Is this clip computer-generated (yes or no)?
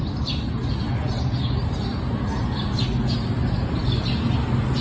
no